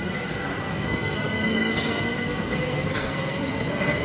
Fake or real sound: fake